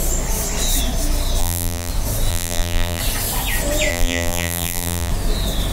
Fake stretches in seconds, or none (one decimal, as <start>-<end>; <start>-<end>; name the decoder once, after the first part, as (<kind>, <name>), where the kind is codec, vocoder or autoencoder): 1.4-1.9 (vocoder, BigVGAN v2); 2.3-3.0; 3.9-5.1